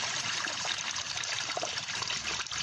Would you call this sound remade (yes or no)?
yes